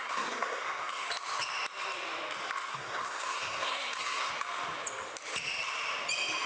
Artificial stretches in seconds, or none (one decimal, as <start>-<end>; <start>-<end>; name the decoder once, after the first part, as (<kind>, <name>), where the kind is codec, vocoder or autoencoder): 0.0-1.1 (codec, SNAC); 2.7-4.3